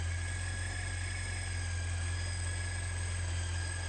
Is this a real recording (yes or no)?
yes